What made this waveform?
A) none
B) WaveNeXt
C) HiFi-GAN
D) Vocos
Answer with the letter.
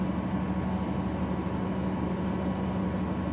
A